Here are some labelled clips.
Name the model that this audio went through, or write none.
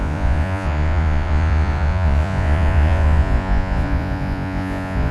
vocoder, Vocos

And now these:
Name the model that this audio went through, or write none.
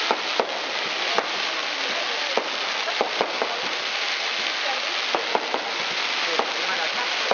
none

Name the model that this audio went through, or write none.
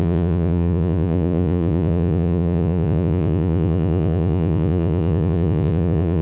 vocoder, Vocos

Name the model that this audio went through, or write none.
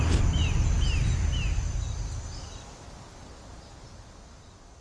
none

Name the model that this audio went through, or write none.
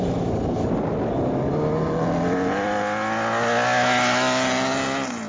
none